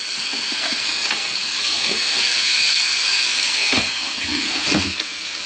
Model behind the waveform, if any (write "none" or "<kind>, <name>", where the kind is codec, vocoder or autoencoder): codec, SNAC